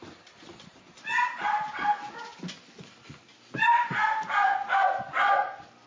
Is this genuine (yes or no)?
yes